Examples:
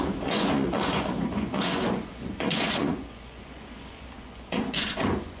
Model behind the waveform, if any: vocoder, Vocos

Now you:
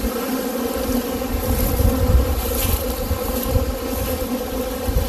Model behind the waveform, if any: none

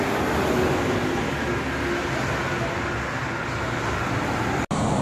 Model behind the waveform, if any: none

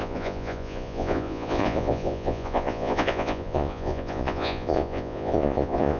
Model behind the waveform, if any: vocoder, Vocos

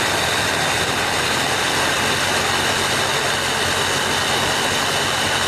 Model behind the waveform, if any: none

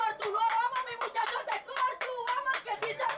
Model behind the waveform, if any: vocoder, BigVGAN v2